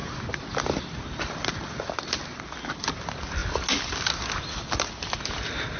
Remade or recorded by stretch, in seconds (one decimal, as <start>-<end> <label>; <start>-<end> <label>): 0.0-5.8 recorded